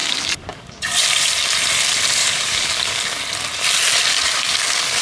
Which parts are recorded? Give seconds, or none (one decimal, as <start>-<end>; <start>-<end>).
0.8-2.2; 3.2-4.1